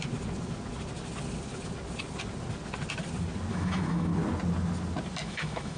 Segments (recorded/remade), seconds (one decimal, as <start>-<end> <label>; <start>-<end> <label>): 0.0-3.5 recorded; 3.5-4.1 remade; 4.1-5.2 recorded; 5.2-5.8 remade